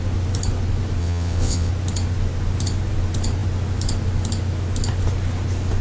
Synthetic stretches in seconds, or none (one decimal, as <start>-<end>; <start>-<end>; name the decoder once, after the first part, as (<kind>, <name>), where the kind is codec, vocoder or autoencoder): 1.0-1.7 (vocoder, WaveNeXt)